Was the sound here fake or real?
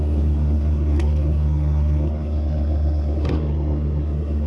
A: fake